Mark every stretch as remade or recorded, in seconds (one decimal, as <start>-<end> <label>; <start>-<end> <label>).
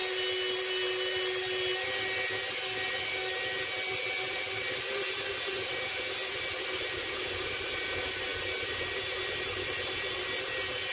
0.0-10.9 recorded